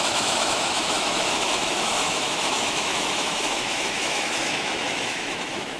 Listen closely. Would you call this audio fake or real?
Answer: fake